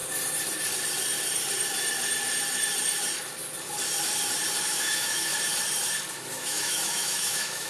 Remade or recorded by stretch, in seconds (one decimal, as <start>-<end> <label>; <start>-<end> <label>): 0.0-4.6 recorded; 4.6-5.3 remade; 5.3-6.3 recorded; 6.3-7.7 remade